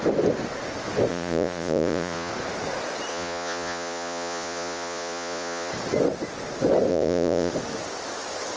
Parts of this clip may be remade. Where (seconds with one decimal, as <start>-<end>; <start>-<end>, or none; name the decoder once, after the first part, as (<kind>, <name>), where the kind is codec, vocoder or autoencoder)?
1.1-2.3 (vocoder, Vocos); 3.1-5.7; 6.9-7.5